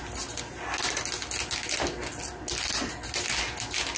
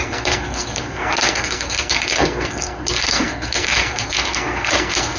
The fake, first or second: second